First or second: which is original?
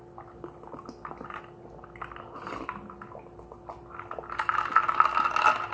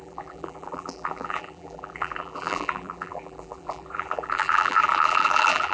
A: first